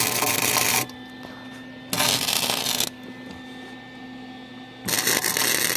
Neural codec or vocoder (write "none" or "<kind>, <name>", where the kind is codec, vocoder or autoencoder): none